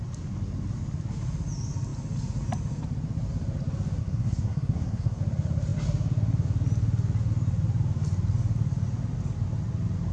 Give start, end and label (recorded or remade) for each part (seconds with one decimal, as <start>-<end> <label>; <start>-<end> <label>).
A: 0.0-4.0 recorded; 4.0-5.2 remade; 5.2-10.1 recorded